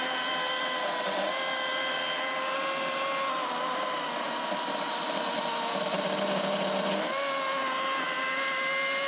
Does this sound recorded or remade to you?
recorded